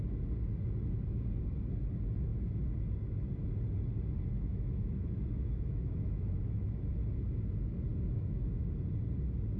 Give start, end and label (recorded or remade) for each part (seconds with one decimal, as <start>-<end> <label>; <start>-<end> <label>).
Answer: 0.0-4.3 recorded; 4.3-6.9 remade; 6.9-7.9 recorded; 7.9-8.7 remade; 8.7-9.6 recorded